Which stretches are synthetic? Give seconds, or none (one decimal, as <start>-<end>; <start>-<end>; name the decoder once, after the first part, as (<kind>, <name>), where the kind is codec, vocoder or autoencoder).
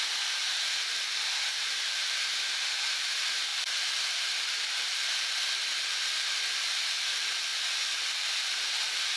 1.5-2.8 (vocoder, BigVGAN v2)